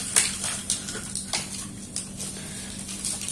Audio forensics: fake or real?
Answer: real